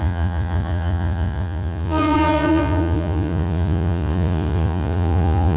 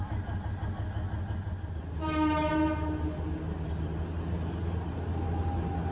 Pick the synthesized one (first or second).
first